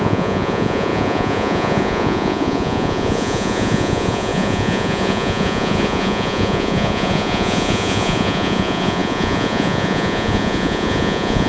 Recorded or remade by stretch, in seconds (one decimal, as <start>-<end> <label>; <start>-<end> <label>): 0.0-11.5 remade